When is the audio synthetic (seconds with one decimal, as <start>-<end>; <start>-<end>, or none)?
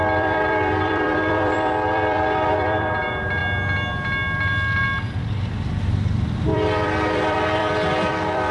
0.0-3.4; 5.2-8.5